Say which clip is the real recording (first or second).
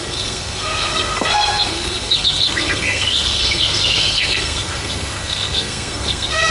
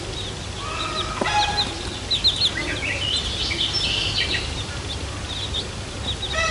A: second